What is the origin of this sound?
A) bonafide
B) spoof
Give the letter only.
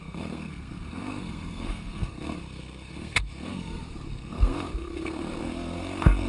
B